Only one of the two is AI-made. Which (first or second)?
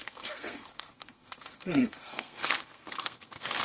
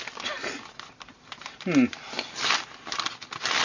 first